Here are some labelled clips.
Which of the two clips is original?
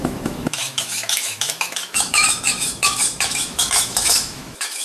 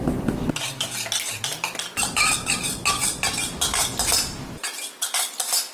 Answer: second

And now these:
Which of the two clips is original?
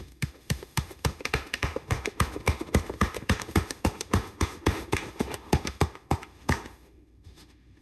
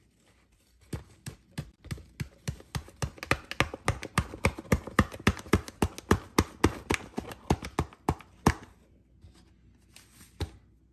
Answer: second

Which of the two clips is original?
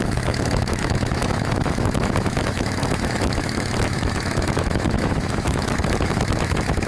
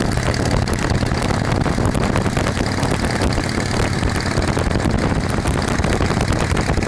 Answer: second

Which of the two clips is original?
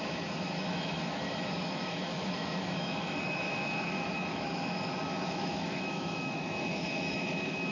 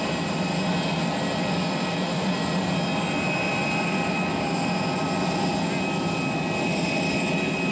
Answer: second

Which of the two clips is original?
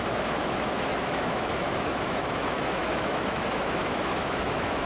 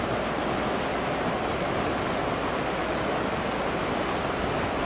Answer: second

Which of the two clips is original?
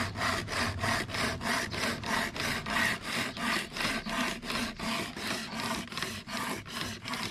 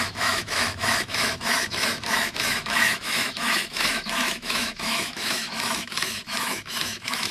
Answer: first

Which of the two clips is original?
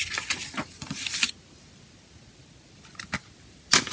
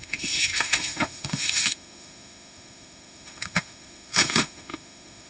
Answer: first